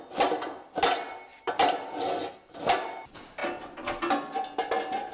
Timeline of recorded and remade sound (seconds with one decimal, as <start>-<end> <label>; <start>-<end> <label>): 0.0-5.1 recorded

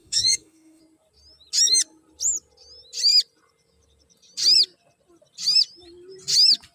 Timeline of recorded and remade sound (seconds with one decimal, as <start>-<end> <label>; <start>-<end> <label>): 0.0-0.8 remade; 0.8-6.7 recorded

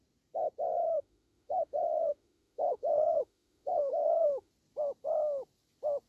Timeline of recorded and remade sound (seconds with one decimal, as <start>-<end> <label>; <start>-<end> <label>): 0.0-0.8 recorded; 0.8-4.5 remade; 4.5-6.1 recorded

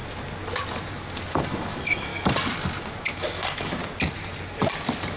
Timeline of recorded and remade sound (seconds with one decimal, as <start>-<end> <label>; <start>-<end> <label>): 0.0-1.3 recorded; 1.3-2.1 remade; 2.1-3.1 recorded; 3.1-3.8 remade; 3.8-5.2 recorded

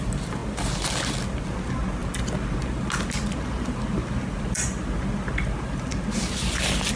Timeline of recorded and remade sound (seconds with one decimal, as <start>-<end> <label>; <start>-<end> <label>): 0.0-7.0 recorded

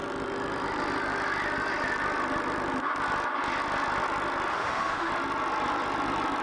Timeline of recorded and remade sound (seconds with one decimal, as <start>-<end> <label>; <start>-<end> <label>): 0.0-4.5 recorded; 4.5-5.1 remade; 5.1-6.4 recorded

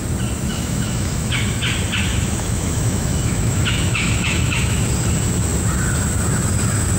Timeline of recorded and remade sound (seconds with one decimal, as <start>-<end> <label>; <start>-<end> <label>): 0.0-0.5 recorded; 0.5-1.6 remade; 1.6-2.1 recorded; 2.1-4.9 remade; 4.9-7.0 recorded